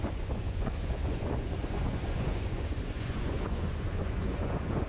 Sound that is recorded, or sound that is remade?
remade